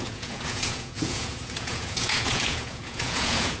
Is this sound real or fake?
fake